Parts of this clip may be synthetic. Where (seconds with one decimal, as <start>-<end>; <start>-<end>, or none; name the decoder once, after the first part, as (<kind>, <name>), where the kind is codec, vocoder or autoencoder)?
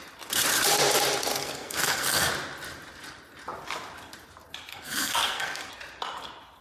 1.3-2.3 (codec, SNAC); 4.7-5.7